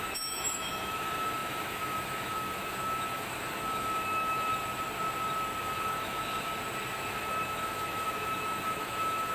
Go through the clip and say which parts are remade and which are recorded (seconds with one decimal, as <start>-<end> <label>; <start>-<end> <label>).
0.0-4.5 remade; 4.5-5.6 recorded; 5.6-6.5 remade; 6.5-7.1 recorded; 7.1-9.3 remade